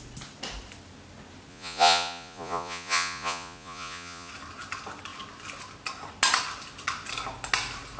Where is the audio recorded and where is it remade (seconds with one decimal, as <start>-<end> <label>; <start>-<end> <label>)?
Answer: 0.0-1.5 recorded; 1.5-4.3 remade; 4.3-8.0 recorded